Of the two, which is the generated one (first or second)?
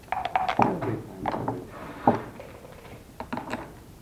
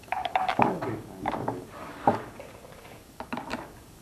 second